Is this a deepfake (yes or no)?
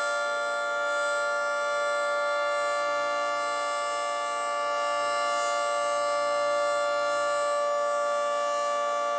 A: no